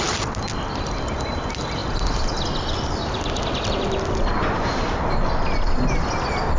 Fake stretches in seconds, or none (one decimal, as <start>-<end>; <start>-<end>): none